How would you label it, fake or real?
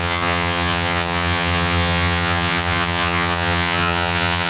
fake